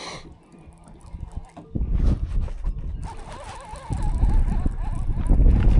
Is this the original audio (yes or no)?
yes